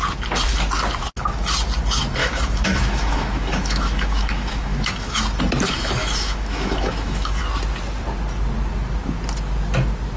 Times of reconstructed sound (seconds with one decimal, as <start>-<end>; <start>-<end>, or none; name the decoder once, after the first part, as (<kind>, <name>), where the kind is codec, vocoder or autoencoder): 2.2-5.2 (autoencoder, DAC-VAE); 6.0-7.4